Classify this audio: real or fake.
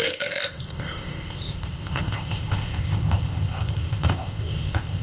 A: fake